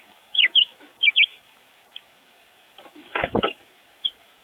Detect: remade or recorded remade